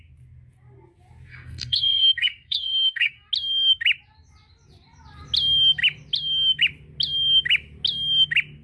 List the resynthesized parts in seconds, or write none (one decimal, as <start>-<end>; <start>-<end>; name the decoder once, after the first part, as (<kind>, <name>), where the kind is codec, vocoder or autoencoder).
1.3-3.3 (codec, SNAC)